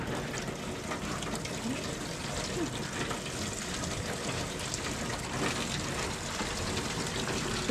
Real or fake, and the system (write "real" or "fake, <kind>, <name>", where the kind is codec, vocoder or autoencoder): real